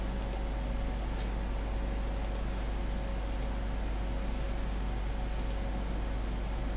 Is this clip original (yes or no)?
yes